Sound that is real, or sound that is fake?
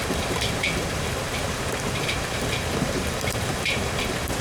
fake